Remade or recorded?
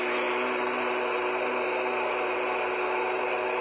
recorded